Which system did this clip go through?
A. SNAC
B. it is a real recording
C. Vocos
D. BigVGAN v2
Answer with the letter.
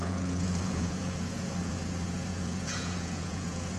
C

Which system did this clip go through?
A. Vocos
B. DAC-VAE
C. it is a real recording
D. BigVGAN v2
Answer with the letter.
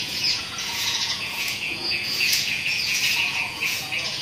A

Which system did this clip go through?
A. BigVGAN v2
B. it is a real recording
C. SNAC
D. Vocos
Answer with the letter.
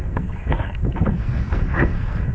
C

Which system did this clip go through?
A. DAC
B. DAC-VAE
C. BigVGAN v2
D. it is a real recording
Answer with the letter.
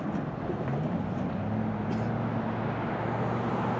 D